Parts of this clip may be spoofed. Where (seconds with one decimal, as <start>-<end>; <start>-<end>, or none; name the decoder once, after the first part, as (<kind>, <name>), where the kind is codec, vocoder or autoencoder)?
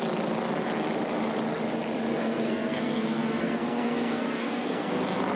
2.1-4.9 (codec, SNAC)